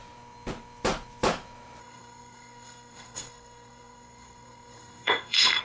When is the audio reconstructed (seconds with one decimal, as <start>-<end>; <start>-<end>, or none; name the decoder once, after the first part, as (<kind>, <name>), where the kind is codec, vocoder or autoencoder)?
1.8-5.6 (codec, SNAC)